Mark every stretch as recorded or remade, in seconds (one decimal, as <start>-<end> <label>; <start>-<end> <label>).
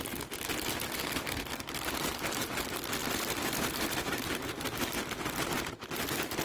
0.0-6.4 recorded